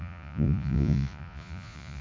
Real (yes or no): no